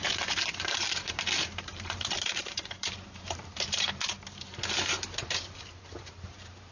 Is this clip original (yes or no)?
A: no